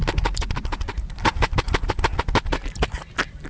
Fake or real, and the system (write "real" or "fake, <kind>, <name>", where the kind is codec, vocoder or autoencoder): real